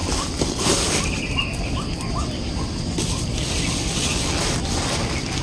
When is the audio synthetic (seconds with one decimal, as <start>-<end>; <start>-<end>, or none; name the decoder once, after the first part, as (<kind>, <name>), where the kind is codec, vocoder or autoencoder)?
0.0-1.2 (vocoder, BigVGAN v2); 2.2-3.3